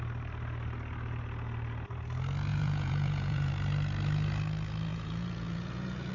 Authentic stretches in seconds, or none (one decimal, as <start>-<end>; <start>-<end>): 0.0-2.5; 3.5-4.9